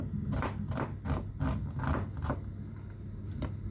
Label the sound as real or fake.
real